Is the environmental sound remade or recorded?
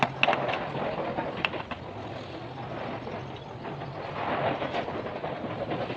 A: recorded